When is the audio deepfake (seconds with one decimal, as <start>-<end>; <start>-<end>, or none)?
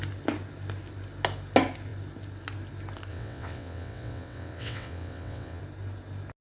3.1-5.6